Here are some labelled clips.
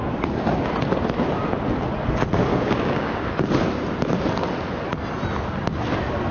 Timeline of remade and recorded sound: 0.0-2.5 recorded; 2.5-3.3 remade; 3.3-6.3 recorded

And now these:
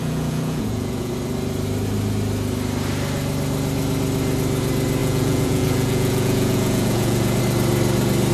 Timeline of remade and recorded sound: 0.0-1.1 remade; 1.1-5.0 recorded; 5.0-7.4 remade; 7.4-8.3 recorded

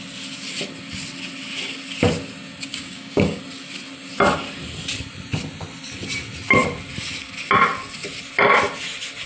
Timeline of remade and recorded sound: 0.0-2.7 recorded; 2.7-3.4 remade; 3.4-9.3 recorded

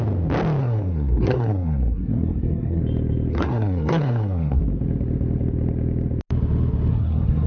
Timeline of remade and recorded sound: 0.0-0.6 recorded; 0.6-2.8 remade; 2.8-3.3 recorded; 3.3-4.6 remade; 4.6-6.9 recorded; 6.9-7.5 remade

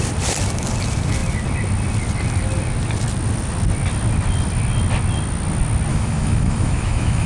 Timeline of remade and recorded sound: 0.0-5.9 recorded; 5.9-7.3 remade

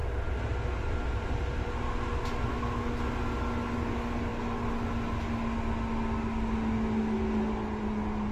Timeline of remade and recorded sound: 0.0-2.5 recorded; 2.5-3.1 remade; 3.1-8.3 recorded

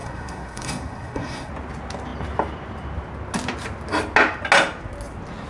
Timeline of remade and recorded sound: 0.0-1.5 remade; 1.5-5.5 recorded

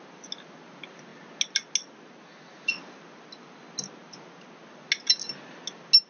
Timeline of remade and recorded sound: 0.0-6.1 recorded